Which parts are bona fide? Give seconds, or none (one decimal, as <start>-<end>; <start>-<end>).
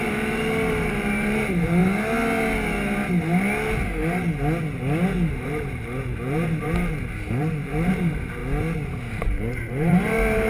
1.8-5.3; 8.4-9.1